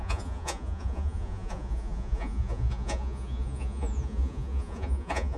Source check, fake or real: fake